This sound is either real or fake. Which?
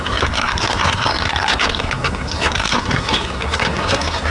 fake